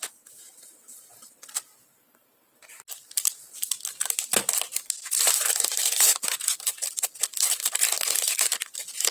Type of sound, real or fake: real